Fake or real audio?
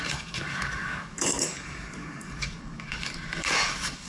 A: fake